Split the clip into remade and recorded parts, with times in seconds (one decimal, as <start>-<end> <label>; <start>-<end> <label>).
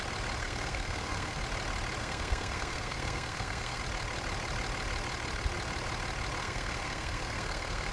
0.0-0.4 recorded; 0.4-1.4 remade; 1.4-2.0 recorded; 2.0-3.8 remade; 3.8-6.4 recorded; 6.4-7.9 remade